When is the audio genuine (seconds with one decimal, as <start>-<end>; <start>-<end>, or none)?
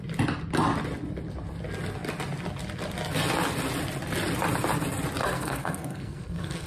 0.0-5.2